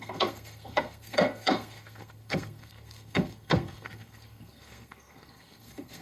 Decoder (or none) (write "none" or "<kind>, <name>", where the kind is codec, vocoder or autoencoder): codec, SNAC